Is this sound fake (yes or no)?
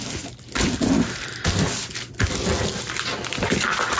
no